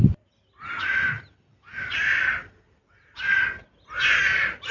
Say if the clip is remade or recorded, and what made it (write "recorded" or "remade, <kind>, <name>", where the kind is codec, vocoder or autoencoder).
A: recorded